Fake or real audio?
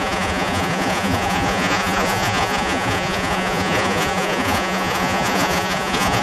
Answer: fake